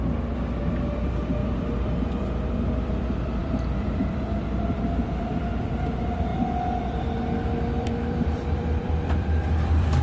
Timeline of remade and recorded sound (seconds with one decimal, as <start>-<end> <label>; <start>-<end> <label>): 0.0-6.3 remade; 6.3-6.8 recorded; 6.8-10.0 remade

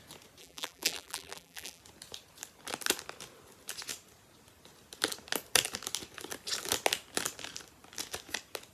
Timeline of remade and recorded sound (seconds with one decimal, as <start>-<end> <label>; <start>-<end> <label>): 0.0-0.4 recorded; 0.4-1.8 remade; 1.8-8.7 recorded

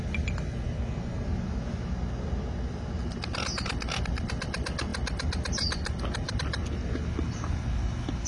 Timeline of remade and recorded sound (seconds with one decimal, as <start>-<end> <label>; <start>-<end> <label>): 0.0-8.3 recorded

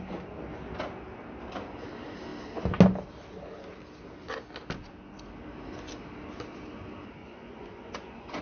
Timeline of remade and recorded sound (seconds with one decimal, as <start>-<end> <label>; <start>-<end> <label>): 0.0-7.2 recorded; 7.2-8.4 remade

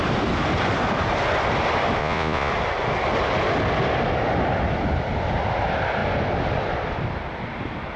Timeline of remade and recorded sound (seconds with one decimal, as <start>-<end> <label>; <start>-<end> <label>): 0.0-2.0 recorded; 2.0-2.5 remade; 2.5-8.0 recorded

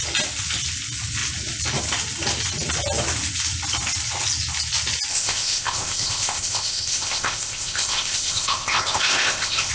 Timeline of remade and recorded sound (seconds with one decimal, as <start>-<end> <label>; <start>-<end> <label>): 0.0-5.1 recorded; 5.1-9.7 remade

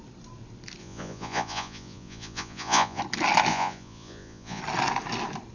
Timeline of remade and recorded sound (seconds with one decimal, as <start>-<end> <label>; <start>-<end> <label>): 0.0-0.8 recorded; 0.8-3.0 remade; 3.0-3.5 recorded; 3.5-4.6 remade; 4.6-5.5 recorded